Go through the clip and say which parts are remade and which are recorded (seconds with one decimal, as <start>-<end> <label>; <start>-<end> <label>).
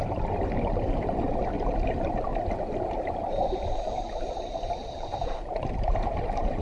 0.0-2.3 remade; 2.3-3.1 recorded; 3.1-6.6 remade